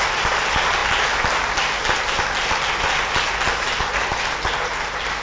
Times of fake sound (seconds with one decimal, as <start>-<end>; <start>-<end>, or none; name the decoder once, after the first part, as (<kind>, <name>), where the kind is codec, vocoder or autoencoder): none